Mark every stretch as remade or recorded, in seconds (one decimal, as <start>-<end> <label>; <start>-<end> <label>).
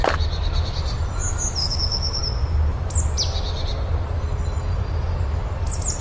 0.0-1.6 recorded; 1.6-2.2 remade; 2.2-6.0 recorded